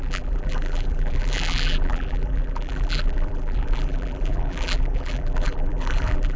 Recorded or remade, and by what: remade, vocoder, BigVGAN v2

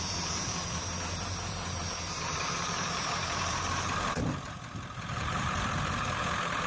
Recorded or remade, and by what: remade, vocoder, BigVGAN v2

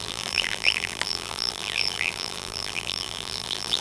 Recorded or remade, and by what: remade, vocoder, BigVGAN v2